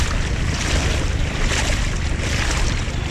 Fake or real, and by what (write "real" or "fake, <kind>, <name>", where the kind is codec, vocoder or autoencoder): fake, vocoder, BigVGAN v2